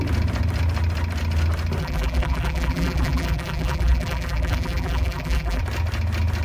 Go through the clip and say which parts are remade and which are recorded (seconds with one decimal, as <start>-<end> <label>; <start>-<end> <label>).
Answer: 0.0-1.8 recorded; 1.8-5.6 remade; 5.6-6.4 recorded

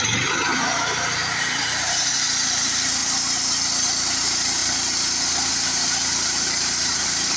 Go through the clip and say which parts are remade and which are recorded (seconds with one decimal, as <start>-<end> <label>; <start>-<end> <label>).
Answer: 0.0-3.0 remade; 3.0-4.1 recorded; 4.1-4.6 remade; 4.6-5.5 recorded; 5.5-7.4 remade

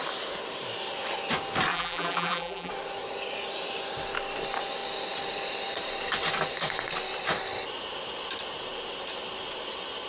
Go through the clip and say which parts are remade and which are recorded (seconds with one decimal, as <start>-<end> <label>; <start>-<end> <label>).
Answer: 0.0-1.7 recorded; 1.7-2.7 remade; 2.7-10.1 recorded

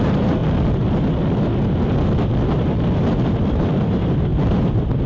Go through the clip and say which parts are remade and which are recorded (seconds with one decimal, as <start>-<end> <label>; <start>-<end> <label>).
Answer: 0.0-0.4 remade; 0.4-3.5 recorded; 3.5-5.1 remade

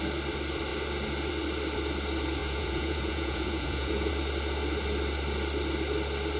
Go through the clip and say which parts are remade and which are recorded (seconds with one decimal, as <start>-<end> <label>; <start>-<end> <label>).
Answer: 0.0-2.4 recorded; 2.4-4.1 remade; 4.1-6.4 recorded